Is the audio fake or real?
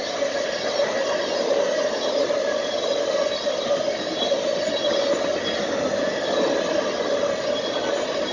real